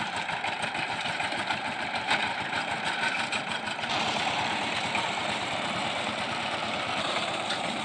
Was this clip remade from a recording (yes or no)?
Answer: yes